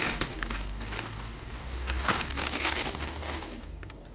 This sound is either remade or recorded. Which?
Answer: remade